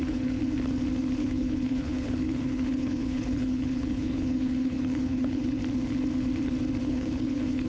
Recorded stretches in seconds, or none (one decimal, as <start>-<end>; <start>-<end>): 0.4-1.2; 5.6-6.8